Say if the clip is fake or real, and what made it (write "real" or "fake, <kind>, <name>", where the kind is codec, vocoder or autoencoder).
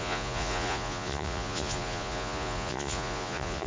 fake, vocoder, Vocos